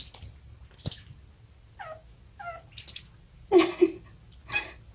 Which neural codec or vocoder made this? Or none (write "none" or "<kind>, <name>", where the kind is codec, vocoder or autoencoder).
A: none